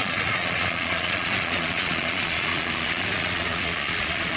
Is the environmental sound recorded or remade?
remade